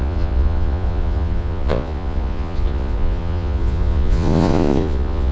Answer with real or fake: fake